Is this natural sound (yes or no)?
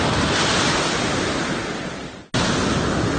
yes